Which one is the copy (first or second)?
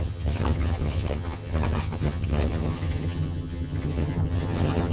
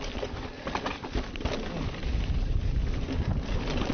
first